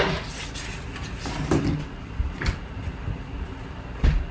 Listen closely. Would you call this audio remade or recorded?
recorded